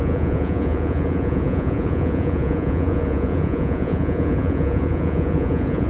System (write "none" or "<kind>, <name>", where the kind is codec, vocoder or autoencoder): vocoder, Vocos